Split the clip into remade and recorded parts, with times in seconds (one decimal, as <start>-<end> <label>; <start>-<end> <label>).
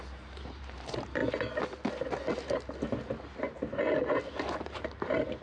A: 0.0-1.2 remade; 1.2-4.4 recorded; 4.4-5.4 remade